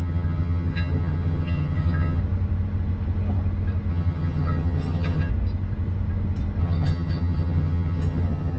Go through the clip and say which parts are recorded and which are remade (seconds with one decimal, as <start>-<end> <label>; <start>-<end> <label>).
0.0-2.2 remade; 2.2-3.9 recorded; 3.9-5.3 remade; 5.3-6.6 recorded; 6.6-8.6 remade